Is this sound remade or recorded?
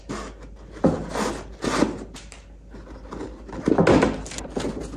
recorded